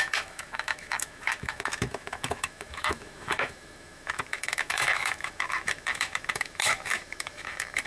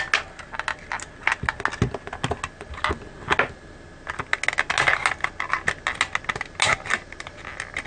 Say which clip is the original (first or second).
second